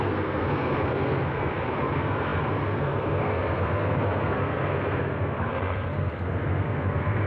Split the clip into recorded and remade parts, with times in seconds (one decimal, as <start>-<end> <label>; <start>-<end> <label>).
0.0-7.3 remade